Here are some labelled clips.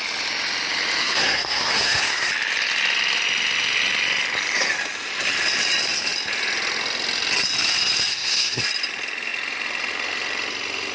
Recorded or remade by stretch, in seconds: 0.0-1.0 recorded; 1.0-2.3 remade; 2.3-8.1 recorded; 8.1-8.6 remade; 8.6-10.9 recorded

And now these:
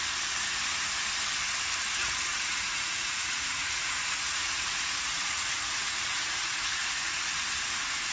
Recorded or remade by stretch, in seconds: 0.0-2.3 recorded; 2.3-7.2 remade; 7.2-8.1 recorded

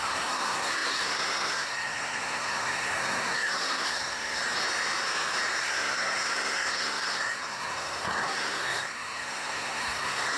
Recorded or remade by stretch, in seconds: 0.0-4.4 remade; 4.4-5.6 recorded; 5.6-10.4 remade

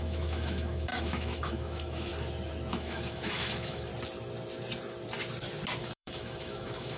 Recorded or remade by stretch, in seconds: 0.0-2.1 remade; 2.1-2.7 recorded; 2.7-3.9 remade; 3.9-5.8 recorded; 5.8-7.0 remade

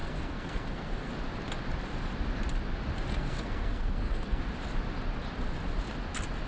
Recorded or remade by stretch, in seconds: 0.0-1.1 remade; 1.1-3.1 recorded; 3.1-4.4 remade; 4.4-6.5 recorded

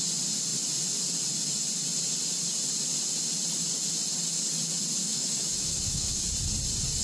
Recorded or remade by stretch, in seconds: 0.0-5.1 recorded; 5.1-6.2 remade; 6.2-7.0 recorded

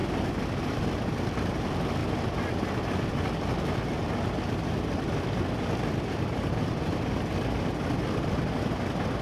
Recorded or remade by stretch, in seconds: 0.0-9.2 recorded